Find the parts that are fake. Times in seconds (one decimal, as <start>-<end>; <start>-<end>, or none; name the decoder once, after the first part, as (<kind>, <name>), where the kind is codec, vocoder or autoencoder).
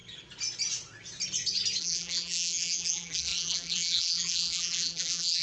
1.8-5.4 (vocoder, BigVGAN v2)